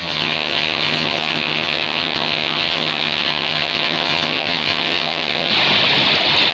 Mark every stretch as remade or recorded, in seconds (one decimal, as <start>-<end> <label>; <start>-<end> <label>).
0.0-5.5 remade; 5.5-6.5 recorded